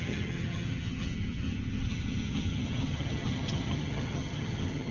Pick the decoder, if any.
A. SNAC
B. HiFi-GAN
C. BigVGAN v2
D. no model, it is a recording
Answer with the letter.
B